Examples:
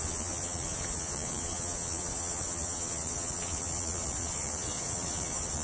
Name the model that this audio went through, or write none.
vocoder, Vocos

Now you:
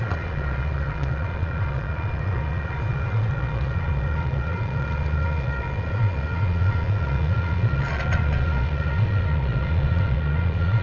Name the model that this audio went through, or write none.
vocoder, Vocos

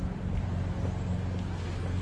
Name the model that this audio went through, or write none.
none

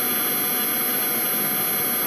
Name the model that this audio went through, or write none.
none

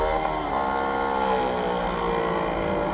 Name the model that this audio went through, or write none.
none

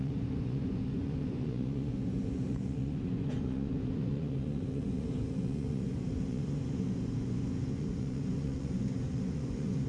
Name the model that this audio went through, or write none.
vocoder, Vocos